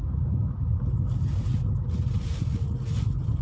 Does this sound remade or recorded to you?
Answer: recorded